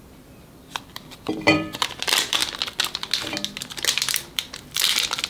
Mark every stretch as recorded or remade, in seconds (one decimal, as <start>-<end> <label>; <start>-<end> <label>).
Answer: 0.0-2.4 remade; 2.4-3.6 recorded; 3.6-5.3 remade